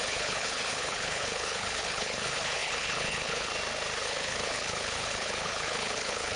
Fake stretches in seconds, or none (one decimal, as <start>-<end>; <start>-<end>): 0.0-3.5; 4.0-6.4